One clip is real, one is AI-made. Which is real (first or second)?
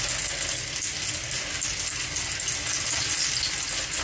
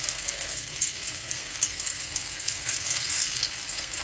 first